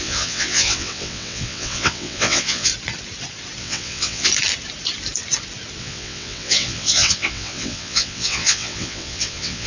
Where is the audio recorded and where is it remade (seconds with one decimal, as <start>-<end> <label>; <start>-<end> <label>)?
0.0-2.7 remade; 2.7-3.6 recorded; 3.6-4.3 remade; 4.3-5.8 recorded; 5.8-9.7 remade